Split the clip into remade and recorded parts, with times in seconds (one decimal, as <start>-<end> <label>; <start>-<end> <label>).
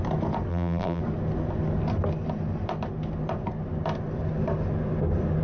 0.0-0.5 recorded; 0.5-1.0 remade; 1.0-5.4 recorded